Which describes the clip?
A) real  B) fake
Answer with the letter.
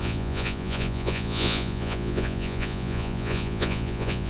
B